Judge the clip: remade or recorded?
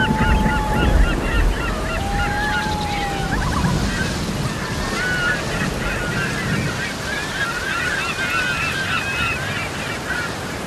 recorded